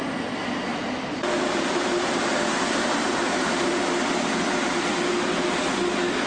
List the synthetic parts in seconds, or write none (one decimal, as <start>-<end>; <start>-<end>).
0.7-4.4; 4.9-5.8